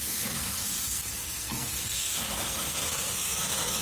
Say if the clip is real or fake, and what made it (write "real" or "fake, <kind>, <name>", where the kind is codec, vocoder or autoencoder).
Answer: fake, codec, SNAC